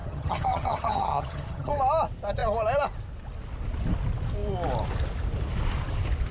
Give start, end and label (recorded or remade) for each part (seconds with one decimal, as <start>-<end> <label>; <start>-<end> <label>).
0.0-1.7 remade; 1.7-6.3 recorded

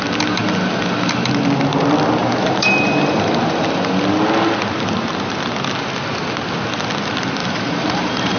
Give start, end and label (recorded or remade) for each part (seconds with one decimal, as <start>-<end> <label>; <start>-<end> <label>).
0.0-2.2 recorded; 2.2-3.3 remade; 3.3-7.4 recorded; 7.4-8.4 remade

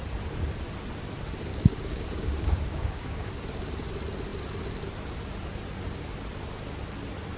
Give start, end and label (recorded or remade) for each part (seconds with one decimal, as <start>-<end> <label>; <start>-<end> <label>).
0.0-1.5 recorded; 1.5-3.3 remade; 3.3-7.4 recorded

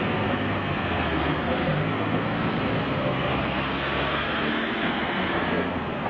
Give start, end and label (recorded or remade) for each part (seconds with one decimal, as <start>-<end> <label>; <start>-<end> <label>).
0.0-6.1 remade

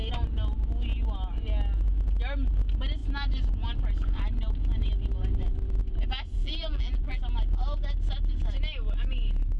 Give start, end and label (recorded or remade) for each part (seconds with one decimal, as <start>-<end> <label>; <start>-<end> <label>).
0.0-6.4 recorded; 6.4-7.2 remade; 7.2-9.6 recorded

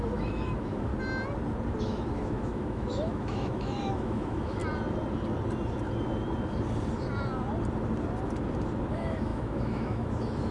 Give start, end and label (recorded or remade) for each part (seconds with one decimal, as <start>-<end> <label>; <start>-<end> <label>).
0.0-0.9 remade; 0.9-1.8 recorded; 1.8-4.6 remade; 4.6-8.9 recorded; 8.9-10.5 remade

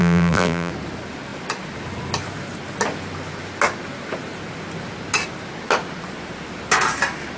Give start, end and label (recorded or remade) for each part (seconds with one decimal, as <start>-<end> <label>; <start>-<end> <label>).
0.0-0.7 remade; 0.7-7.4 recorded

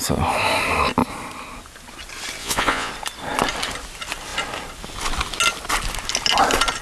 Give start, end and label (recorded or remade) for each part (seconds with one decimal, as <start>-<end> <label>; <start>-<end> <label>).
0.0-2.4 recorded; 2.4-2.9 remade; 2.9-6.8 recorded